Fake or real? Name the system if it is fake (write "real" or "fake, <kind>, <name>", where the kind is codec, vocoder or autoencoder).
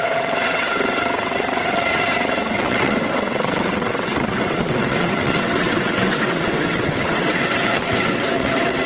fake, vocoder, WaveNeXt